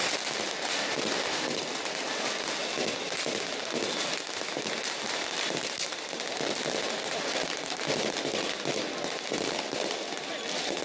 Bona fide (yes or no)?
yes